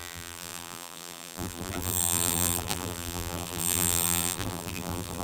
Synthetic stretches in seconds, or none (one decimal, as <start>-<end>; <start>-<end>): 0.0-5.2